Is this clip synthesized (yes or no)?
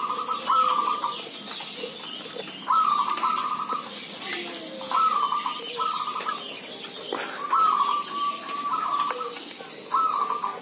no